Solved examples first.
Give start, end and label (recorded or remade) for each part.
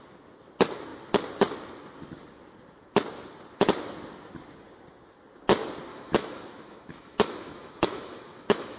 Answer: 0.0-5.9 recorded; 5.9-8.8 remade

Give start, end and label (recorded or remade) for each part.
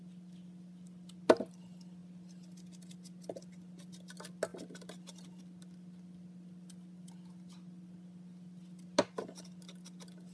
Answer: 0.0-10.3 recorded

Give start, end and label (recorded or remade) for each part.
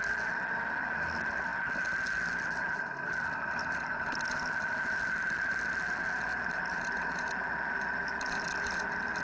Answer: 0.0-9.2 recorded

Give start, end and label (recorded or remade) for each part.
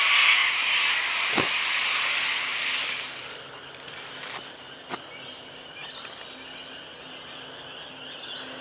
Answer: 0.0-2.5 recorded; 2.5-3.5 remade; 3.5-8.6 recorded